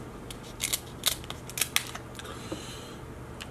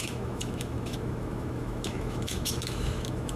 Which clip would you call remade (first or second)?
second